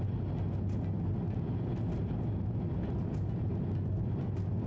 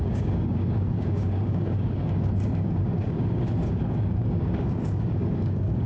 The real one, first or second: first